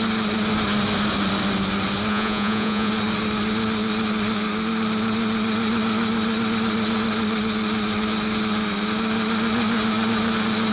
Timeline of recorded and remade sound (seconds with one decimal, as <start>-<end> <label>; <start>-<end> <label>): 0.0-2.1 recorded; 2.1-2.9 remade; 2.9-10.7 recorded

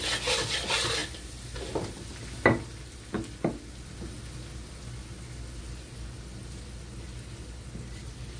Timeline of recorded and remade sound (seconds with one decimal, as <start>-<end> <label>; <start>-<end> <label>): 0.0-8.4 recorded

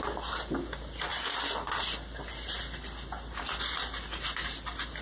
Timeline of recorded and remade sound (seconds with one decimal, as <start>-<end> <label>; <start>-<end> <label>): 0.0-5.0 recorded